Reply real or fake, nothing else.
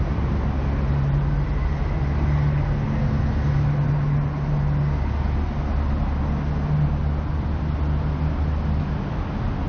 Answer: real